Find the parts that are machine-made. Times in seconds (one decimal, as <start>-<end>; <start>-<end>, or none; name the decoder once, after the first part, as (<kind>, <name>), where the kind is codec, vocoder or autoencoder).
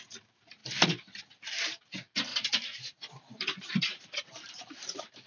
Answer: 2.3-4.7 (vocoder, BigVGAN v2)